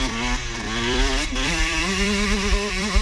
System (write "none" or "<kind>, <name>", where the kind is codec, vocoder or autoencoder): vocoder, BigVGAN v2